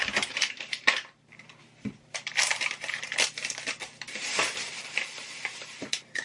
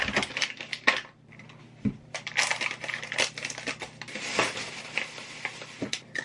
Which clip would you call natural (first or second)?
second